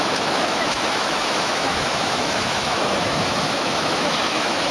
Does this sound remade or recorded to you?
remade